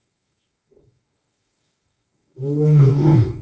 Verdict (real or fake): fake